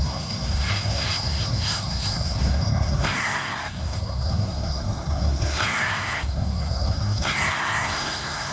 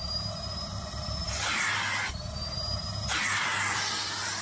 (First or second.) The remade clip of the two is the first